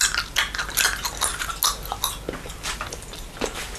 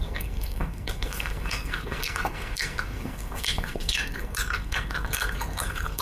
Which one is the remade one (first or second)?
second